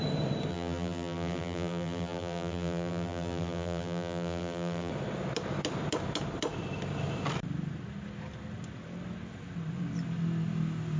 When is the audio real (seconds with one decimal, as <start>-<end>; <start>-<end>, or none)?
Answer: 0.0-0.5; 4.9-11.0